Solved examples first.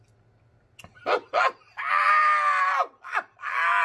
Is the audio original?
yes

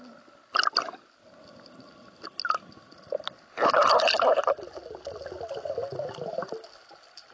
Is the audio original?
yes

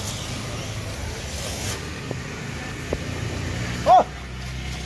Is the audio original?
yes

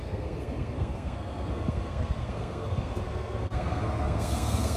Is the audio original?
no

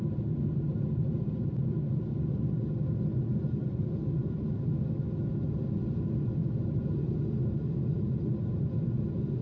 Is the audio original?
yes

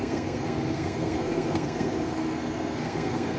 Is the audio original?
no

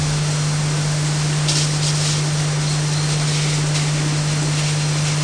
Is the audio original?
yes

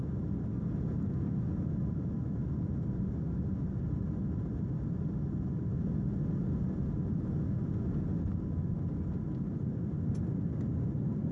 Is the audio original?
yes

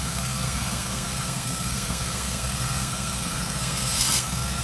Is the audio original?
no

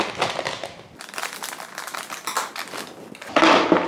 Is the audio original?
yes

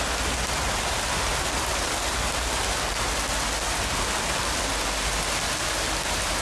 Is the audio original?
yes